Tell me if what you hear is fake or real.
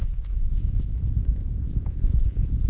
fake